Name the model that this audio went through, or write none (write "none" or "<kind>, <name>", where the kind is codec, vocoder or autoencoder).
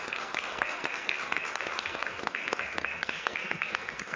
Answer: codec, SNAC